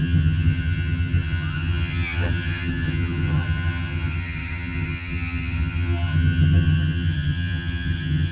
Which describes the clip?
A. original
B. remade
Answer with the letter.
B